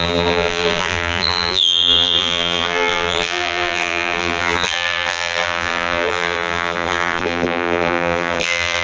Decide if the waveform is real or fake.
fake